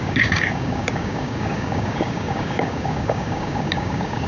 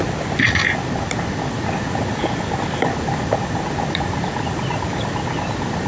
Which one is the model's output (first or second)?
first